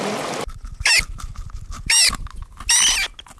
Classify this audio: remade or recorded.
recorded